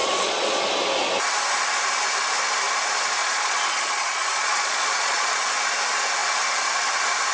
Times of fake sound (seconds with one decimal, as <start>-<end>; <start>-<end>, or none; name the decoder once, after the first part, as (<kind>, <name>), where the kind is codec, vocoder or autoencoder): 0.0-0.6 (vocoder, Vocos); 3.2-5.4